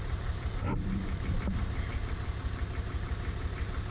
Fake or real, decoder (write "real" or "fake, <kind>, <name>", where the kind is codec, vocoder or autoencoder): real